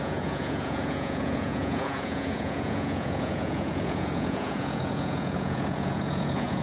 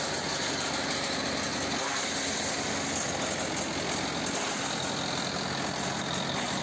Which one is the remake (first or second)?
first